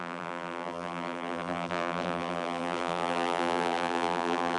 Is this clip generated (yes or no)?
yes